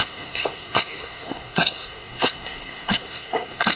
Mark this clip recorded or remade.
remade